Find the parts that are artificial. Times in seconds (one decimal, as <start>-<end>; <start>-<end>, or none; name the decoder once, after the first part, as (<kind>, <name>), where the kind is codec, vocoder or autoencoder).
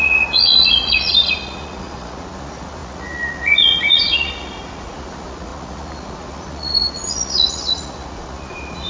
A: 0.0-8.9 (vocoder, Vocos)